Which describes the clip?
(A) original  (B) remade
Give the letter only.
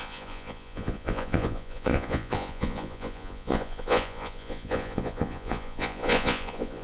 B